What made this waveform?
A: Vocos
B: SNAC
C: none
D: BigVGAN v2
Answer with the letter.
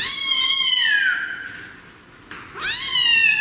C